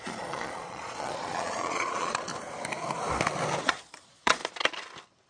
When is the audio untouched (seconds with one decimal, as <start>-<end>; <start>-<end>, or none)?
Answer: 2.3-3.6; 4.4-5.3